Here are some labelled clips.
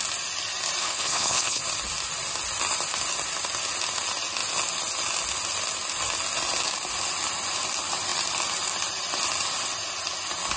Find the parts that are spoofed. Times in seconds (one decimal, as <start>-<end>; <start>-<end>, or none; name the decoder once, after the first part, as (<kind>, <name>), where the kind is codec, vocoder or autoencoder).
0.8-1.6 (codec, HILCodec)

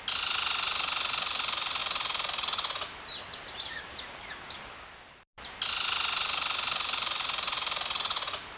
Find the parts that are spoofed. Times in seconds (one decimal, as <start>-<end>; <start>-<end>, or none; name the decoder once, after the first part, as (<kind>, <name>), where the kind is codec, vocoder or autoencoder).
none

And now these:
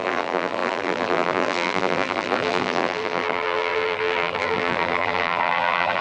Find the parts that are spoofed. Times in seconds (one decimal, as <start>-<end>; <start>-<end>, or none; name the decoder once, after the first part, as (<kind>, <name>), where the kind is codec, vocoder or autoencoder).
0.0-6.0 (vocoder, BigVGAN v2)

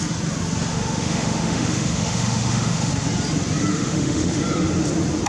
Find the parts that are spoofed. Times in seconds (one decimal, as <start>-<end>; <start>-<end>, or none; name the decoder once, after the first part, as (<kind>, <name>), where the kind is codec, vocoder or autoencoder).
0.7-2.9 (autoencoder, DAC-VAE); 3.7-4.4